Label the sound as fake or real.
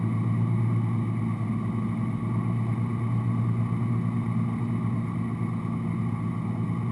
real